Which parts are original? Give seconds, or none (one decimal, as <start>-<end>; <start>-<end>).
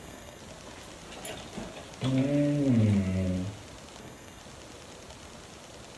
0.4-4.0; 4.4-6.0